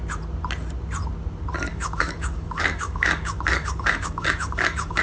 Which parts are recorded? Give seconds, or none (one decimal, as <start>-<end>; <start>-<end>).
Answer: 0.0-1.7